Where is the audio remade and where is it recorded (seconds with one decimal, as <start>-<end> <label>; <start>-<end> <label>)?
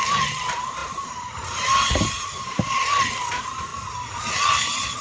0.0-3.7 remade; 3.7-5.0 recorded